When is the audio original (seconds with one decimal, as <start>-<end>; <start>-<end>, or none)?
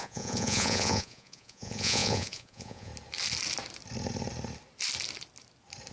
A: 2.9-5.9